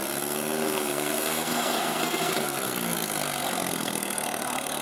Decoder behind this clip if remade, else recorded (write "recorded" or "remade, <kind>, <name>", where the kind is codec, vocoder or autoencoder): remade, codec, SNAC